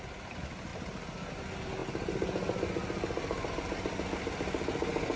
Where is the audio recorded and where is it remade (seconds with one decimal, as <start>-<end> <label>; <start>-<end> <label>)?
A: 0.0-5.2 recorded